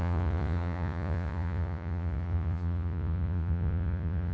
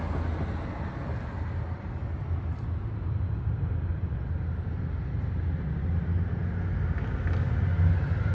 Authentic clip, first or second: second